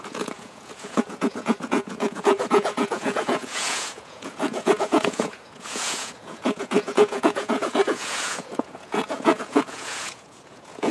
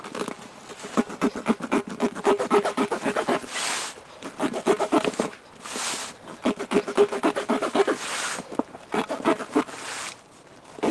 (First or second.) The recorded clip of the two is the second